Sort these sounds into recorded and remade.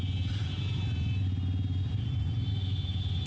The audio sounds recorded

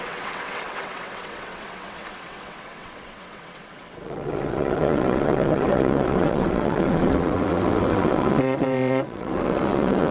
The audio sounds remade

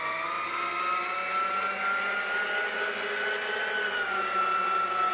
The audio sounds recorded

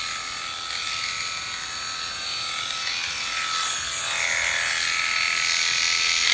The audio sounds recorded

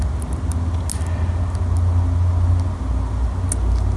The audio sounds recorded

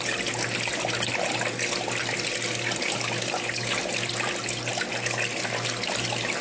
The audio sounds recorded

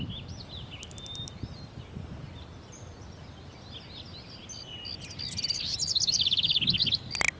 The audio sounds recorded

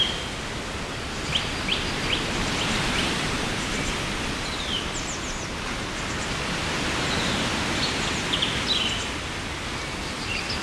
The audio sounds recorded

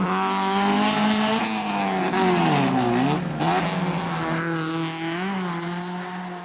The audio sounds recorded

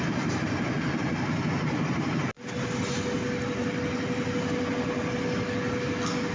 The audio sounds recorded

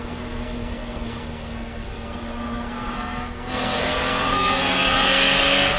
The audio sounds remade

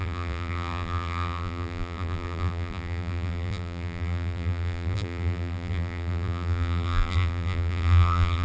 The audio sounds remade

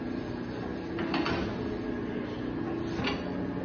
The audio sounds recorded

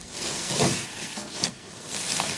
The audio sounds remade